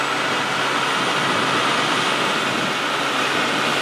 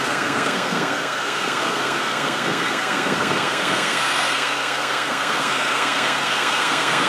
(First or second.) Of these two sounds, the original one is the first